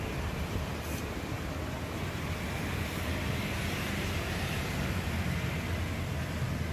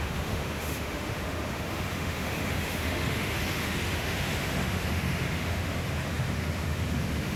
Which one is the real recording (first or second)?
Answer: first